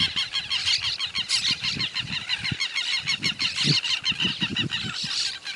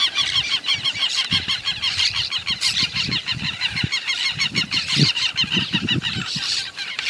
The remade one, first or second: second